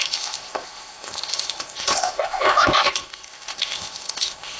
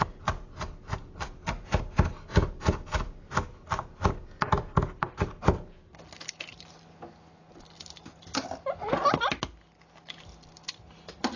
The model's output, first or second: first